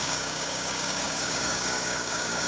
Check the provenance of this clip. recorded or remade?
remade